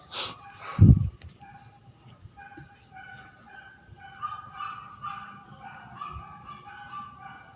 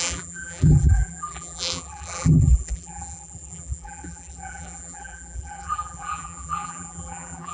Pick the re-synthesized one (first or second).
second